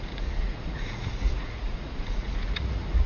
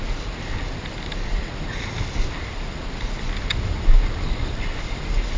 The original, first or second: second